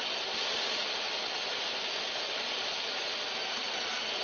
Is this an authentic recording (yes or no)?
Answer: yes